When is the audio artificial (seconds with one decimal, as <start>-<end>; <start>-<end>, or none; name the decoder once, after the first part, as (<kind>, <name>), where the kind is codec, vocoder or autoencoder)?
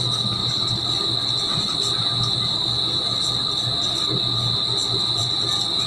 4.8-5.9 (vocoder, BigVGAN v2)